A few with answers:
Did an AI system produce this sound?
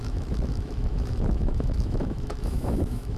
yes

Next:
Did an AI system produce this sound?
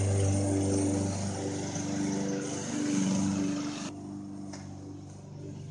no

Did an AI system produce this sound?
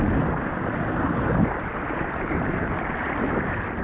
no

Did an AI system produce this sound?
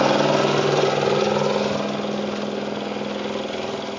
no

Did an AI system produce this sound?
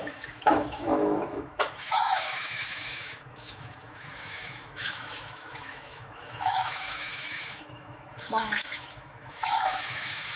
yes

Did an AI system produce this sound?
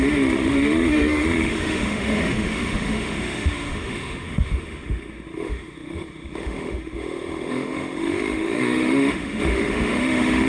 yes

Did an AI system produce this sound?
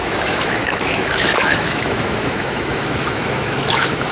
yes